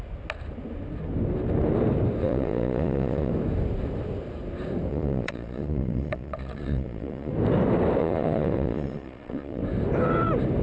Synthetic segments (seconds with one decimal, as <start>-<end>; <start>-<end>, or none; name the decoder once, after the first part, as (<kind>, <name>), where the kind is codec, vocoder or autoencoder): 2.2-3.3 (vocoder, Vocos); 4.9-7.3; 8.0-9.6